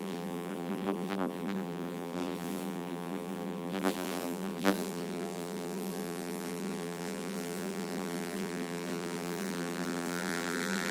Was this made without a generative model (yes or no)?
no